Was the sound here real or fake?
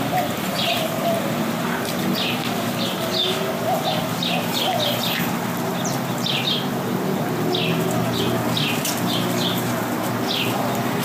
real